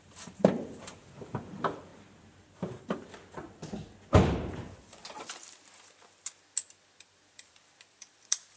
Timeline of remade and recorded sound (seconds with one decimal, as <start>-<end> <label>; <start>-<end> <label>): 0.0-3.6 remade; 3.6-4.3 recorded; 4.3-5.0 remade; 5.0-7.0 recorded; 7.0-8.6 remade